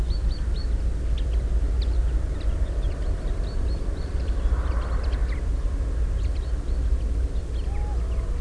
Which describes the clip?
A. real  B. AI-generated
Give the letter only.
A